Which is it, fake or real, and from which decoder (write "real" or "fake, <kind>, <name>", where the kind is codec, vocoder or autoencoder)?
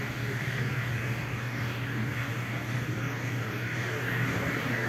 fake, codec, DAC